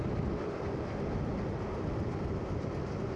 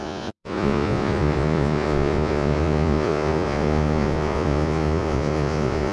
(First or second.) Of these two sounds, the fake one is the second